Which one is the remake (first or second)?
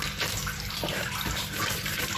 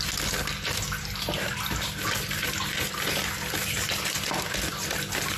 first